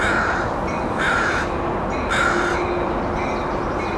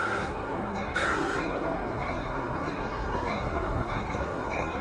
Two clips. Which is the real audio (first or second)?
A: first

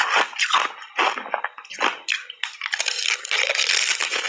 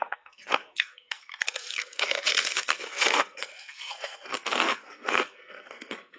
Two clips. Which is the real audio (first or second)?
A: first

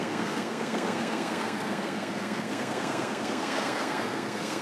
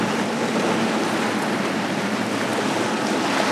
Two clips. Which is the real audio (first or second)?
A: second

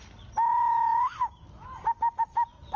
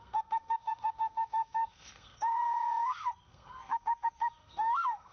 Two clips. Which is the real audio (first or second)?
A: first